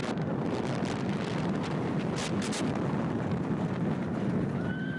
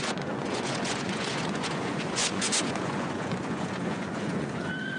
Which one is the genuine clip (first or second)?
first